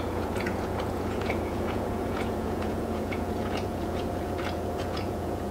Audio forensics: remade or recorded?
remade